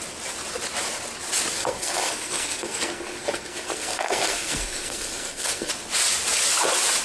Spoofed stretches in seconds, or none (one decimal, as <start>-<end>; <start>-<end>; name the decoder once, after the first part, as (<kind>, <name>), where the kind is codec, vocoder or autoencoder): 1.5-5.7 (codec, SNAC)